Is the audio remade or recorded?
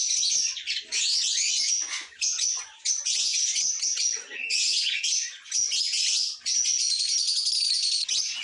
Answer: remade